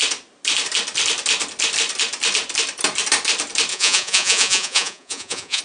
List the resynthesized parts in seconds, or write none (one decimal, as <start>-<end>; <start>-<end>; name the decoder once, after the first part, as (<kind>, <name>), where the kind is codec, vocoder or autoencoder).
3.7-5.6 (vocoder, Vocos)